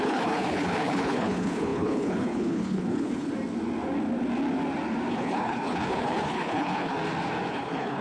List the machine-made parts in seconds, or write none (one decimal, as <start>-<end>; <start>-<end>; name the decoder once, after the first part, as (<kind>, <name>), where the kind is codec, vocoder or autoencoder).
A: 0.0-3.3 (codec, HILCodec); 5.1-7.0; 7.5-8.0